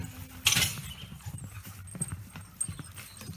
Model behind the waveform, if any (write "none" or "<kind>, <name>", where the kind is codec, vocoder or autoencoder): none